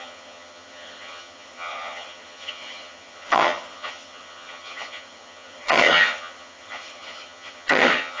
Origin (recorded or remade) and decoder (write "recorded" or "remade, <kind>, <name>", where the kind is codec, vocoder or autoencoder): remade, vocoder, HiFi-GAN